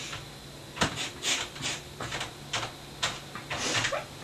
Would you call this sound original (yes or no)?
yes